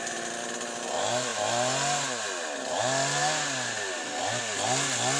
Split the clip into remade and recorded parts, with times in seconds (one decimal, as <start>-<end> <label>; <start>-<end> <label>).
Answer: 0.0-5.2 recorded